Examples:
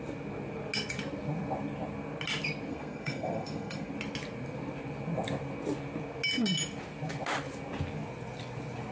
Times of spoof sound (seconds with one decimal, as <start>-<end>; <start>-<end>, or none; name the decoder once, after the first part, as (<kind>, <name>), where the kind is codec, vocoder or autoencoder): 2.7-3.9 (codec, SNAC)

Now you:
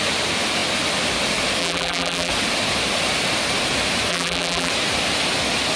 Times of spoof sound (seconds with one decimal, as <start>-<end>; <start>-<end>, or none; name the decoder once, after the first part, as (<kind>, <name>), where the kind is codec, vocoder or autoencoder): 1.6-2.3 (vocoder, BigVGAN v2); 4.1-4.7

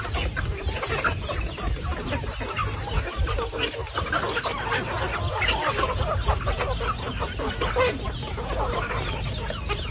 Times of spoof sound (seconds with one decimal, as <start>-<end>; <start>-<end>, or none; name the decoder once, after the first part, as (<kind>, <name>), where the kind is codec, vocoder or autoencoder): none

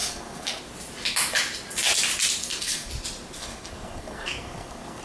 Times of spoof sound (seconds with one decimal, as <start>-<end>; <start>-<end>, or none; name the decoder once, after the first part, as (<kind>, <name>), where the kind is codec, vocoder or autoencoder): 0.0-0.6 (codec, SNAC); 2.4-2.9; 3.4-5.0

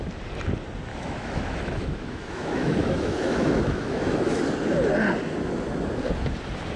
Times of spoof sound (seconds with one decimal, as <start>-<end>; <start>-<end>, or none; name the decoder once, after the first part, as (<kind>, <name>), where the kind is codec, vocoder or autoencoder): 0.9-4.4 (autoencoder, DAC-VAE)

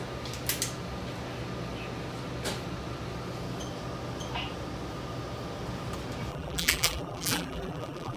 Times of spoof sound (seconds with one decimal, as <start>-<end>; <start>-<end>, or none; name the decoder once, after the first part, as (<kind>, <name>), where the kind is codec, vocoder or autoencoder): 6.3-8.2 (vocoder, BigVGAN v2)

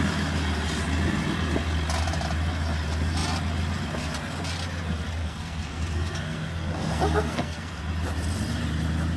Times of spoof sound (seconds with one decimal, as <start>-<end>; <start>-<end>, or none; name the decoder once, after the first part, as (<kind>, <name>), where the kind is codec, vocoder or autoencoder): 5.2-7.8 (codec, SNAC)